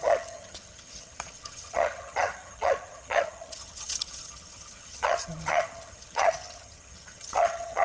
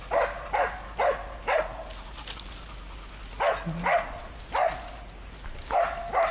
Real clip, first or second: second